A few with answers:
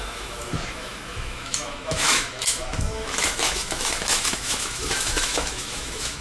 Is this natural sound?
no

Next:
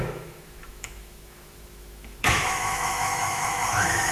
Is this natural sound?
no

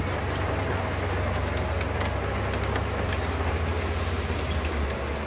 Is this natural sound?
yes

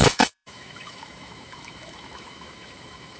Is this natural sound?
no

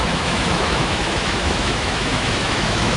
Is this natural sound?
no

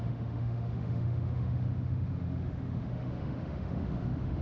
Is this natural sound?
no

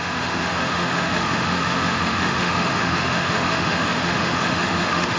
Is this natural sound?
no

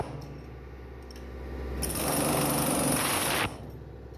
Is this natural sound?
yes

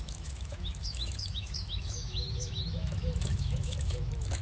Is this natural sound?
no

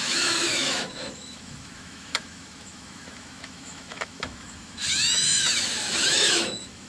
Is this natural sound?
no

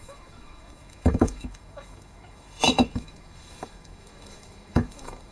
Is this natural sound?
no